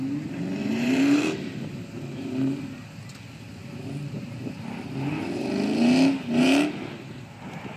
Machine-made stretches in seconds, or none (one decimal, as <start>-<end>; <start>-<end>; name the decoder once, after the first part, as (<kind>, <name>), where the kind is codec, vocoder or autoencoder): 0.6-1.2 (vocoder, BigVGAN v2); 3.6-4.5